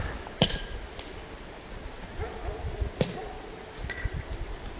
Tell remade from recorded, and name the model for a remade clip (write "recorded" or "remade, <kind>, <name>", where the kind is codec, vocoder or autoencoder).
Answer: recorded